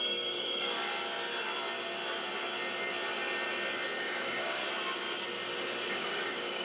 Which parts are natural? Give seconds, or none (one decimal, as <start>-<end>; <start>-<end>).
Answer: 0.9-4.0; 4.6-5.9